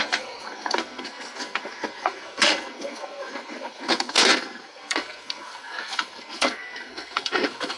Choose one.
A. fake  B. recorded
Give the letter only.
A